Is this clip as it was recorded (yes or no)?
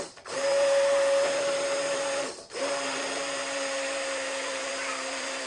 no